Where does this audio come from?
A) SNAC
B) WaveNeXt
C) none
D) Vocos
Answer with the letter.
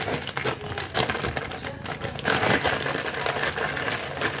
C